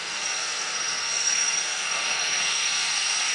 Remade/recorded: remade